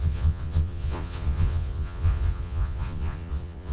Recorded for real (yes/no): no